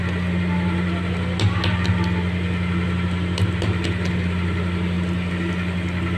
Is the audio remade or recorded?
recorded